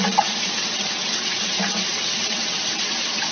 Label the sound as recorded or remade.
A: remade